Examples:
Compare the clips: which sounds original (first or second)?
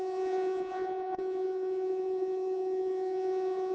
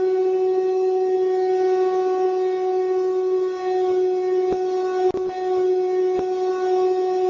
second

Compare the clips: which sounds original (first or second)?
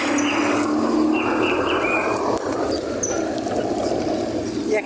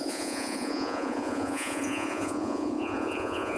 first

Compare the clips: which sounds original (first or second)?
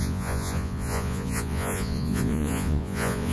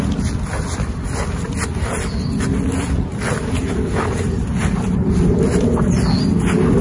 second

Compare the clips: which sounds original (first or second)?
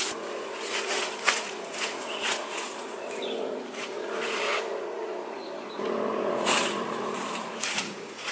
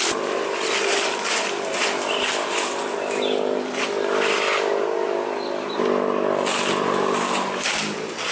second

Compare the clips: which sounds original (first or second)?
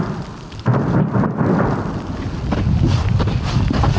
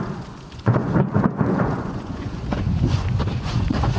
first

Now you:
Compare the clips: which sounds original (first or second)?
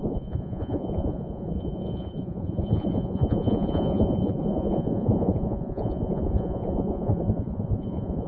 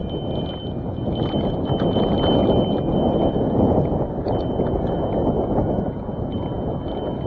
second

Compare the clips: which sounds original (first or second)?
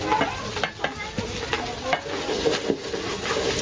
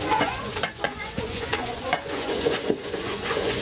first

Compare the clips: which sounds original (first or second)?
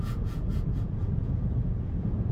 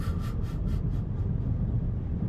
second